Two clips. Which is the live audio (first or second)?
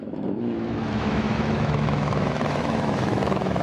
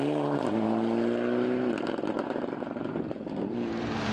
second